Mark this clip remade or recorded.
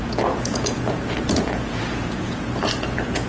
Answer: remade